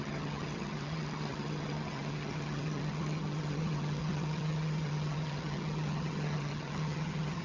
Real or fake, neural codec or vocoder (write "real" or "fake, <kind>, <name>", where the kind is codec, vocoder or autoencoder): fake, vocoder, HiFi-GAN